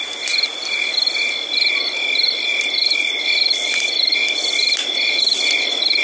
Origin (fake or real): real